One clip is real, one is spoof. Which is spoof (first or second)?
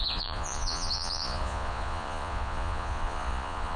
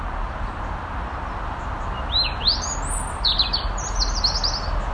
first